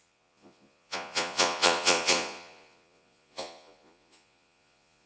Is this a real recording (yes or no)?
no